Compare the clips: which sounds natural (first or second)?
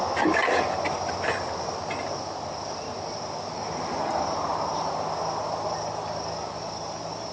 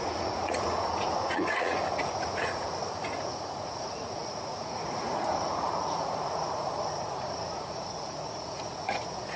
first